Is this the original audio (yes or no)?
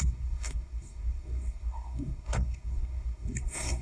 no